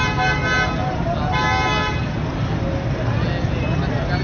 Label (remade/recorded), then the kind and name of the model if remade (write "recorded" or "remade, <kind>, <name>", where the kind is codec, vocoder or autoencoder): recorded